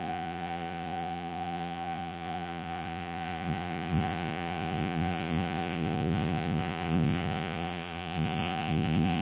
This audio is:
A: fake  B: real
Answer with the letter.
A